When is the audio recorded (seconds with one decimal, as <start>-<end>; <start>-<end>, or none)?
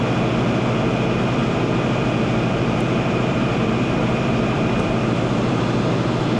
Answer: 0.0-1.4; 5.2-6.4